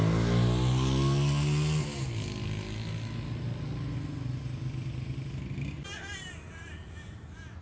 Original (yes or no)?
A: yes